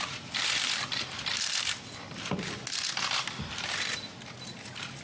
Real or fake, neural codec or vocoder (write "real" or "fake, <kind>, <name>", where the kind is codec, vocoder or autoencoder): real